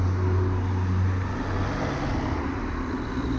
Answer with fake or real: real